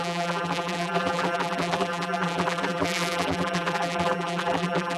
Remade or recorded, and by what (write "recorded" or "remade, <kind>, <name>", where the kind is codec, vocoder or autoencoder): remade, vocoder, BigVGAN v2